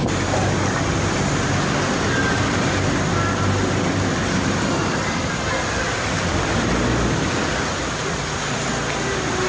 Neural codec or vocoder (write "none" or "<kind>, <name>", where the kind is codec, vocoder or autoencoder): none